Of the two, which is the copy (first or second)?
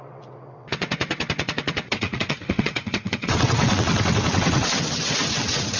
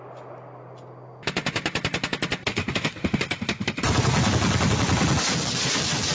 first